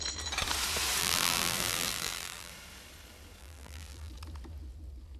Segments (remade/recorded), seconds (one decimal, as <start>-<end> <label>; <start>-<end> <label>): 0.0-1.0 recorded; 1.0-2.5 remade; 2.5-3.4 recorded; 3.4-4.1 remade; 4.1-5.2 recorded